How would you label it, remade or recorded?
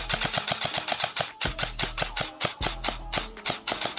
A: recorded